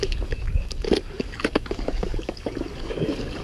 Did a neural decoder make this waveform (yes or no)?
yes